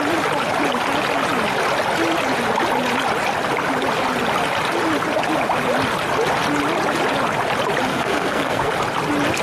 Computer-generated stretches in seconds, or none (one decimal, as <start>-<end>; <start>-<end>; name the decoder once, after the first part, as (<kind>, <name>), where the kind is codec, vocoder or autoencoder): 7.9-8.7 (codec, SNAC)